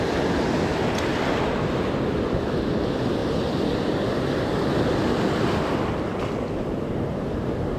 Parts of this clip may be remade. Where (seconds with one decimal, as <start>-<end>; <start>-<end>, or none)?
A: none